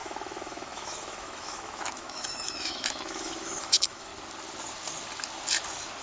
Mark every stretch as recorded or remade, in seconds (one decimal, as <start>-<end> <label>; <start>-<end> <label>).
0.0-4.1 remade; 4.1-6.0 recorded